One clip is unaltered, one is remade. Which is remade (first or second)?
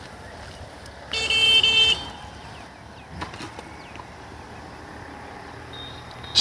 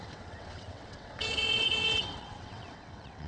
second